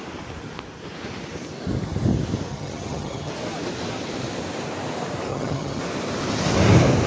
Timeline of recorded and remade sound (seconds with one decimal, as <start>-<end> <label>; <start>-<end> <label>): 0.0-2.5 recorded; 2.5-3.3 remade; 3.3-5.3 recorded; 5.3-5.8 remade; 5.8-7.1 recorded